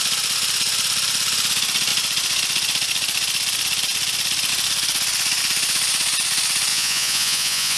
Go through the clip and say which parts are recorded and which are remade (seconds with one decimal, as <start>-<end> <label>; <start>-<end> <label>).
0.0-6.7 recorded; 6.7-7.8 remade